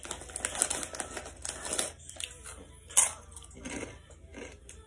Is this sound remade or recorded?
recorded